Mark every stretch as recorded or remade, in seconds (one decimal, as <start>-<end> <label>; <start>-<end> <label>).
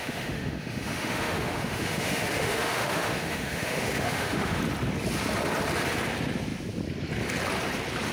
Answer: 0.0-4.6 remade; 4.6-8.1 recorded